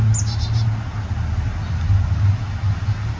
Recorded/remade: recorded